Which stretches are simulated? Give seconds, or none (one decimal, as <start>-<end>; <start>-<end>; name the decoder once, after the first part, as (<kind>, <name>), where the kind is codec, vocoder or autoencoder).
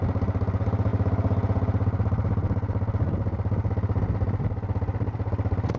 none